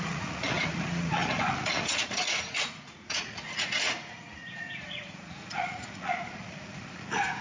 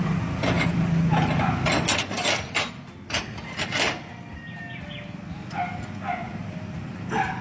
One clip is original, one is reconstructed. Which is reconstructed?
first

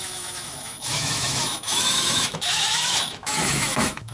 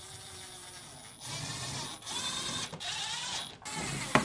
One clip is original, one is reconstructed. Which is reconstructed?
first